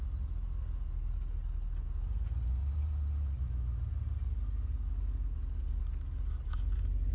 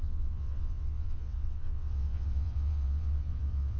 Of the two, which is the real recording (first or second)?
first